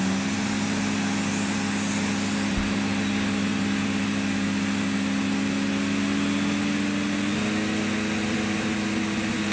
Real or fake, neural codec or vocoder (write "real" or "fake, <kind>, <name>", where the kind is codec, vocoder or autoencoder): real